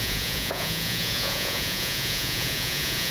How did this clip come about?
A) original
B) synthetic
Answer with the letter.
B